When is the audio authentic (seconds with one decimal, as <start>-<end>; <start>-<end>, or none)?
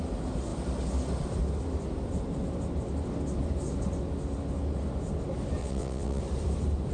0.0-5.6; 6.2-6.9